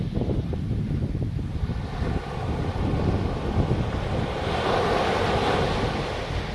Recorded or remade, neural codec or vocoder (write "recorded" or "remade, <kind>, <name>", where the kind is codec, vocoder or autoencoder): recorded